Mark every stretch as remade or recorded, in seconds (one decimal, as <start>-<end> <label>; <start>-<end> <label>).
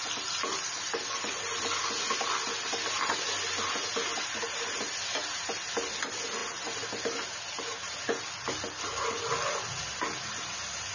0.0-10.9 recorded